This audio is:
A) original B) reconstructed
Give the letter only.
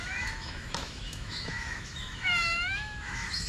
B